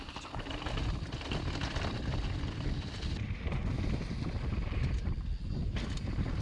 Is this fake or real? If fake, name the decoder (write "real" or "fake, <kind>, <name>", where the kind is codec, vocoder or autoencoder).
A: real